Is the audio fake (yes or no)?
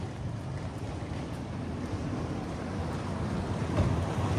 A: no